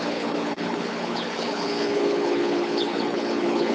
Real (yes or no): no